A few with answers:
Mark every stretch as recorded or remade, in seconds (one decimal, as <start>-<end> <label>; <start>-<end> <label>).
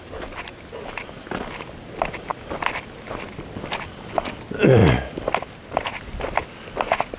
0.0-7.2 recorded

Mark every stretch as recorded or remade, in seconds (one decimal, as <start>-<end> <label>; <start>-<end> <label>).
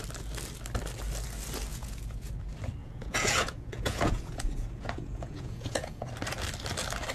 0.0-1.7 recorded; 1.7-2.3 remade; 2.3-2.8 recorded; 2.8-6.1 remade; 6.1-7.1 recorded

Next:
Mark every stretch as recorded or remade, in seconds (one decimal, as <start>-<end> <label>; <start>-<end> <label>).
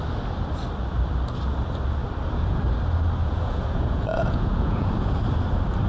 0.0-3.2 recorded; 3.2-5.2 remade; 5.2-5.9 recorded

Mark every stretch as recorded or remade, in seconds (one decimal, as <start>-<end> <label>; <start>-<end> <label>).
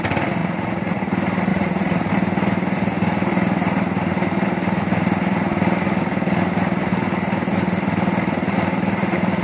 0.0-0.4 recorded; 0.4-1.0 remade; 1.0-1.5 recorded; 1.5-2.1 remade; 2.1-9.4 recorded